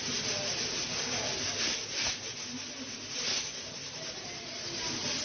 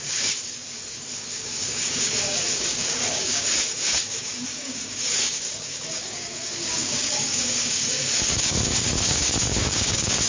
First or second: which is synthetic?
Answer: second